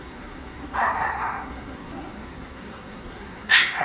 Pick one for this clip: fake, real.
fake